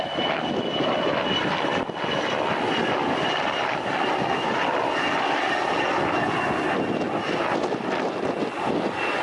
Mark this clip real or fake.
real